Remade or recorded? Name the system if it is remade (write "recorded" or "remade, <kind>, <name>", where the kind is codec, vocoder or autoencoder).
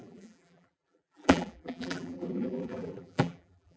remade, vocoder, BigVGAN v2